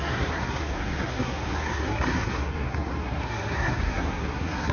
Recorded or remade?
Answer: remade